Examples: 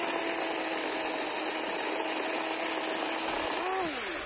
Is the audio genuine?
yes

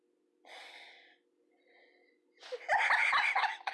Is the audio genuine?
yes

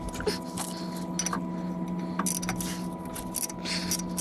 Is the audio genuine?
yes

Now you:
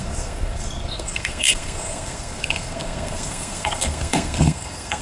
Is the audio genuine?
no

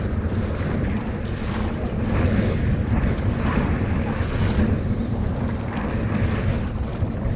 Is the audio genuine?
yes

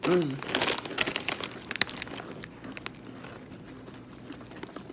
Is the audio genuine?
yes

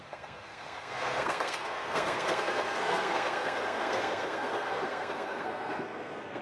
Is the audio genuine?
no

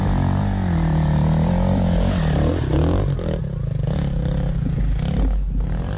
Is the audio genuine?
yes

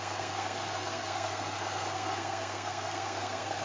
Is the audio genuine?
no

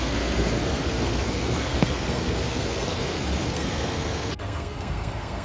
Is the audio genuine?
no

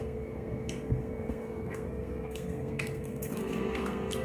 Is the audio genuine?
no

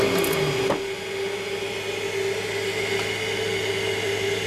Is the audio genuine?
yes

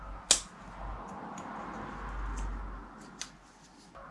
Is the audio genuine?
yes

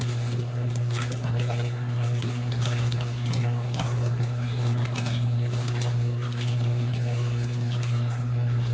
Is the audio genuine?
no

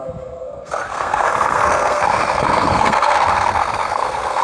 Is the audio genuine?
no